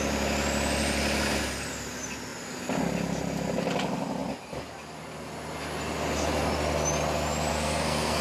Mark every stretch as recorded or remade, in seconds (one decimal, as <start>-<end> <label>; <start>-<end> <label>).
0.0-7.5 recorded; 7.5-8.2 remade